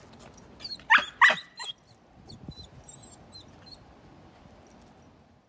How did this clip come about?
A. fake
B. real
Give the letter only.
B